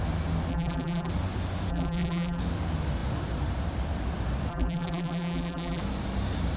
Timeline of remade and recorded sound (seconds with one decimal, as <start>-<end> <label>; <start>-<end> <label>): 0.0-0.5 recorded; 0.5-1.1 remade; 1.1-1.7 recorded; 1.7-2.4 remade; 2.4-4.5 recorded; 4.5-5.8 remade; 5.8-6.6 recorded